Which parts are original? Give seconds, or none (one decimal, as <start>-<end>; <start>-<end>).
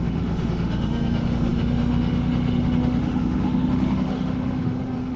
none